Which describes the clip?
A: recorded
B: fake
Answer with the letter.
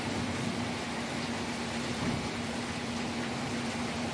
A